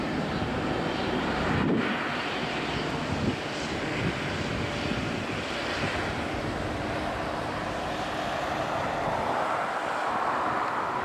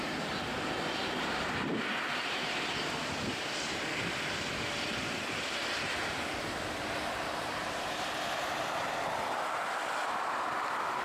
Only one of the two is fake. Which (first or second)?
second